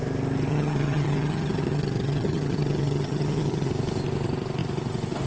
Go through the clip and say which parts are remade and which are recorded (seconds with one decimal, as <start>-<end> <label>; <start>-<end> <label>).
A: 0.0-0.5 recorded; 0.5-3.7 remade; 3.7-5.3 recorded